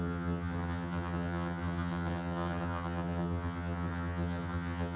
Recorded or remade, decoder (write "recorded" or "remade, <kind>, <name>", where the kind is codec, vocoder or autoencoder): remade, vocoder, HiFi-GAN